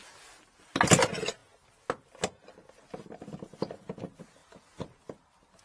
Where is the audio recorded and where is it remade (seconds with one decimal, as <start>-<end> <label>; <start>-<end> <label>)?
0.0-5.6 recorded

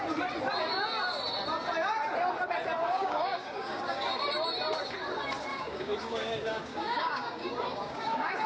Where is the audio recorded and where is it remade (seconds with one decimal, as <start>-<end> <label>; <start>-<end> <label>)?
0.0-2.8 recorded; 2.8-4.1 remade; 4.1-5.5 recorded; 5.5-8.5 remade

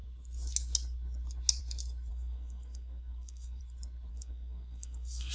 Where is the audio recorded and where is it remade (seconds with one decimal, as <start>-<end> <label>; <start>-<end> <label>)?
0.0-2.1 recorded; 2.1-3.6 remade; 3.6-4.1 recorded; 4.1-5.3 remade

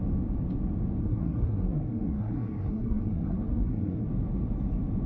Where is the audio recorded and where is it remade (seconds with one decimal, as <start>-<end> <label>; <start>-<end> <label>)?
0.0-1.0 recorded; 1.0-4.1 remade; 4.1-5.1 recorded

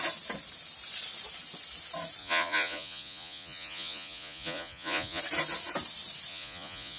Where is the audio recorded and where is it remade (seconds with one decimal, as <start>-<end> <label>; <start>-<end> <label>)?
0.0-2.2 recorded; 2.2-5.2 remade; 5.2-6.3 recorded; 6.3-7.0 remade